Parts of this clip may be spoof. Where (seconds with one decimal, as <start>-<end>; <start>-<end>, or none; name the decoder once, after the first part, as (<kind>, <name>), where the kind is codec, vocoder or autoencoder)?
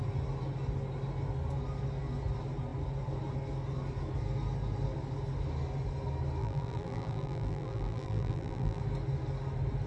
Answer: 6.4-8.8 (vocoder, BigVGAN v2)